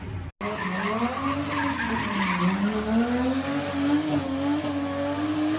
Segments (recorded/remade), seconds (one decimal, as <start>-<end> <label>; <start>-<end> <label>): 0.0-5.6 recorded